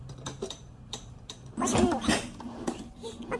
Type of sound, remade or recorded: remade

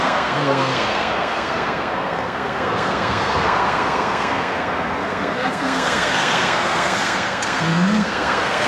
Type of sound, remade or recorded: remade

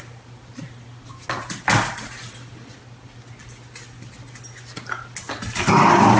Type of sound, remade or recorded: recorded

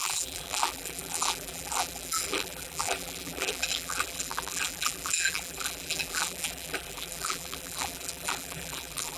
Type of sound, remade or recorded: remade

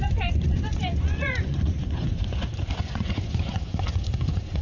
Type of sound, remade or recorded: remade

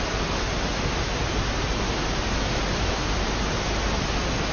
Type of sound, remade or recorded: recorded